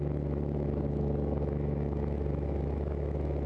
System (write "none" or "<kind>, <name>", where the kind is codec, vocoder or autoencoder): autoencoder, DAC-VAE